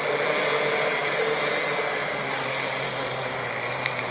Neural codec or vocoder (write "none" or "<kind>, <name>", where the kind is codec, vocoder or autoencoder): none